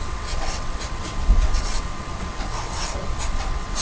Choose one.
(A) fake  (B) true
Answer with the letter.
A